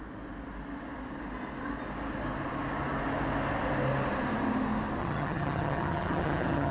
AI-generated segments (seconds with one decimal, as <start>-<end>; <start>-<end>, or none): 5.0-6.7